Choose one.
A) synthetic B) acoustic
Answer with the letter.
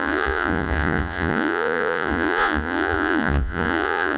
A